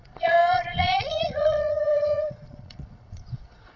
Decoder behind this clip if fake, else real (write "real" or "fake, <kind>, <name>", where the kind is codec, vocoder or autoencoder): fake, vocoder, Vocos